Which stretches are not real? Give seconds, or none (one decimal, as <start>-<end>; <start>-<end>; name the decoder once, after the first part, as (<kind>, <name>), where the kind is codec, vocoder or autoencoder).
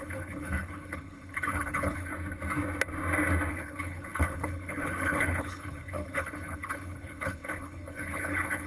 0.0-2.1 (codec, HILCodec); 3.5-8.7